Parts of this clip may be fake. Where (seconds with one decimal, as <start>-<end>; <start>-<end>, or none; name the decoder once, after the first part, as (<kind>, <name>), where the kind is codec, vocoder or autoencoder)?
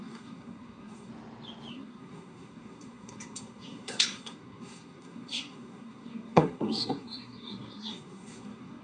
0.0-1.1 (codec, SNAC); 1.7-8.8